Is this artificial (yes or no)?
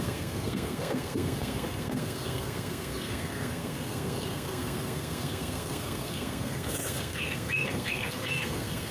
yes